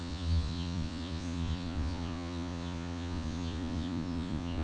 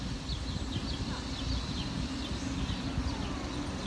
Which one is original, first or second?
second